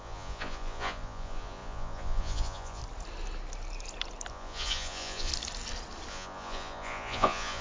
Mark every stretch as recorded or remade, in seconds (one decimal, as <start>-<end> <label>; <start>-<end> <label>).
0.0-2.8 remade; 2.8-4.3 recorded; 4.3-5.3 remade; 5.3-6.1 recorded; 6.1-7.6 remade